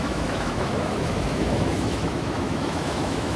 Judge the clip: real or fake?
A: fake